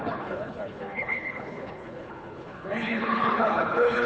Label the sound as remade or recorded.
remade